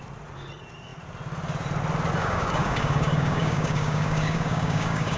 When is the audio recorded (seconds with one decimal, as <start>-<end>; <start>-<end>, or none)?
0.0-2.2